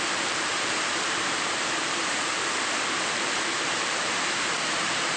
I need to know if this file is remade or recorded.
remade